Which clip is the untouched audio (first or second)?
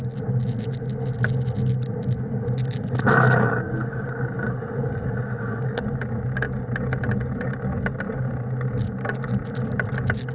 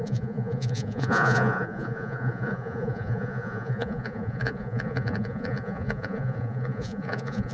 first